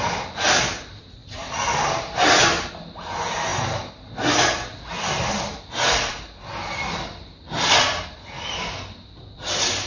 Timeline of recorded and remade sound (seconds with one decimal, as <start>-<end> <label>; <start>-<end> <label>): 0.0-9.9 recorded